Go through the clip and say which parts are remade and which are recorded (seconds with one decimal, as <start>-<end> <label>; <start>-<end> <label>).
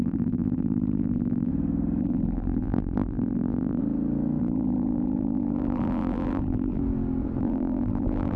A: 0.0-1.5 remade; 1.5-2.0 recorded; 2.0-3.8 remade; 3.8-4.4 recorded; 4.4-6.8 remade; 6.8-7.4 recorded; 7.4-8.4 remade